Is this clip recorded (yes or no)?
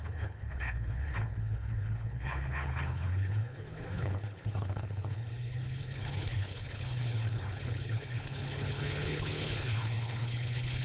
no